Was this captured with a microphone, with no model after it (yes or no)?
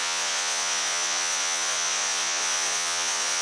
no